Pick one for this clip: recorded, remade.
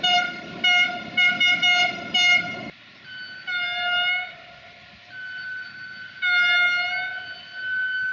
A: recorded